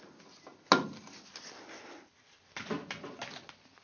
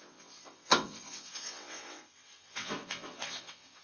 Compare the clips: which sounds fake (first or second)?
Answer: second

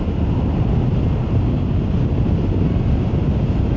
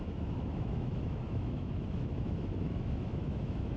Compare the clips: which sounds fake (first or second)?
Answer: second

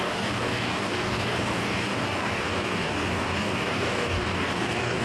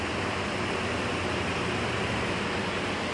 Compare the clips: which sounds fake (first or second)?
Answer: first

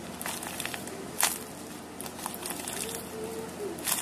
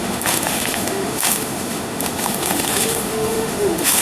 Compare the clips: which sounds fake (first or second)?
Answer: second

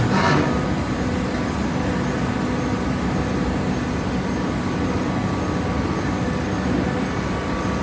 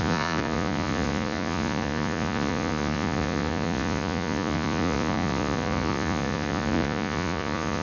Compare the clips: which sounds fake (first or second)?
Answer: second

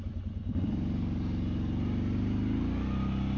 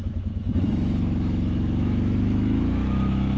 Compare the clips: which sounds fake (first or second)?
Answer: second